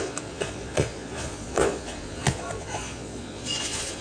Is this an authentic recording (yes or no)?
no